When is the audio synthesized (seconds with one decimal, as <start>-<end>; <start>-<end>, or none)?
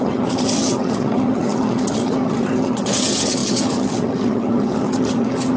0.0-5.6